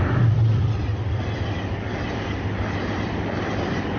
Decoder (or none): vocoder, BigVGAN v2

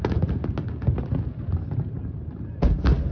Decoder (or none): none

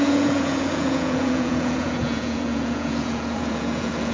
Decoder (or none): vocoder, Vocos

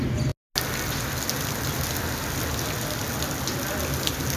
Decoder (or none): none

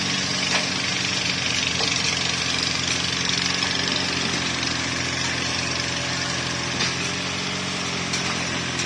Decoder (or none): none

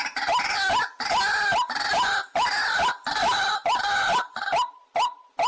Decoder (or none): none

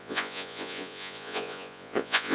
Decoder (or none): vocoder, Vocos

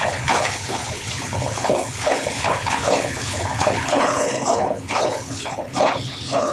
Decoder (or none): codec, HILCodec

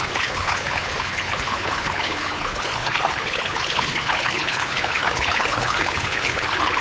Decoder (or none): codec, HILCodec